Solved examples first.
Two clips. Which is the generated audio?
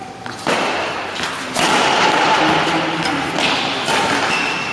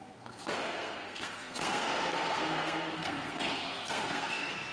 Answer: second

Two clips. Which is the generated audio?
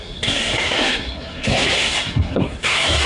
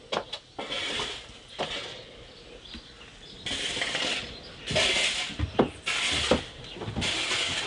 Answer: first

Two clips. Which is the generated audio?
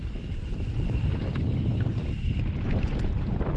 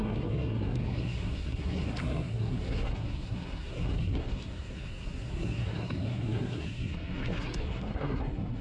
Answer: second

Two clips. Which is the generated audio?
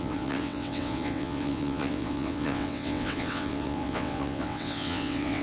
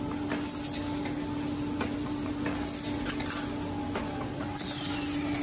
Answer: first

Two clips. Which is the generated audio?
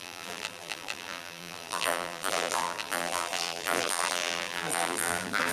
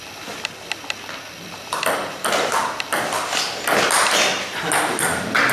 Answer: first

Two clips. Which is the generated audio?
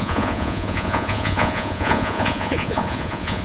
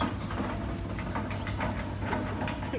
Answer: first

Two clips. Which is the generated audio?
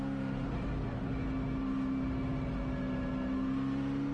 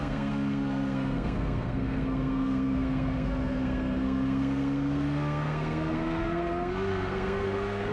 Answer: second